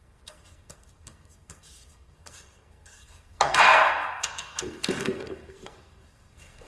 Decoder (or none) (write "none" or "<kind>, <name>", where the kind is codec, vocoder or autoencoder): codec, SNAC